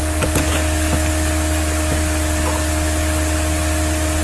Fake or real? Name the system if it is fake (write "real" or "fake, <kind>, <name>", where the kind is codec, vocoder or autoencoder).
real